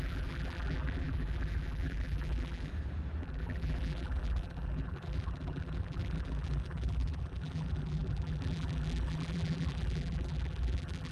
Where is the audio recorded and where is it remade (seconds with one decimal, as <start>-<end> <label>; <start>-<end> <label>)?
0.0-2.7 remade; 2.7-3.2 recorded; 3.2-11.1 remade